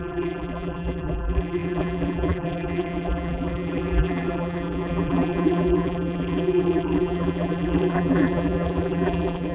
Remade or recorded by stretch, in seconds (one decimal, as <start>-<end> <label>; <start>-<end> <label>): 0.0-9.5 remade